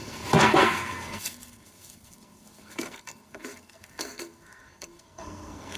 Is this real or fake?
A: fake